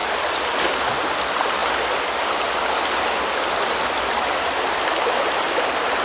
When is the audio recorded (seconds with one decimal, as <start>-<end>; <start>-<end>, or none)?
0.9-6.0